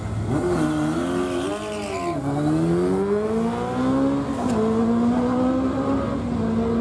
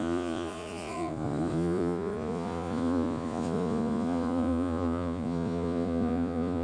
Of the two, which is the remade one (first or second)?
second